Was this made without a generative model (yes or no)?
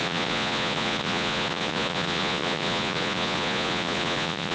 no